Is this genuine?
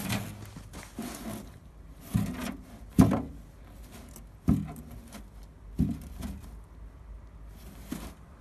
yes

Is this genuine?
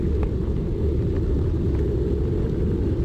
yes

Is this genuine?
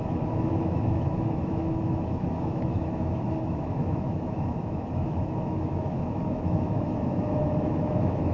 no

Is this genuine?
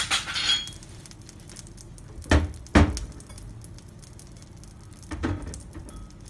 yes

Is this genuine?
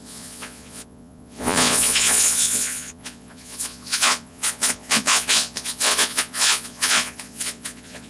no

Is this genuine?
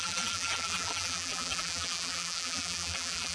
no